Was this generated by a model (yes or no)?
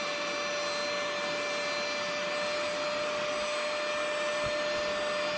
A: no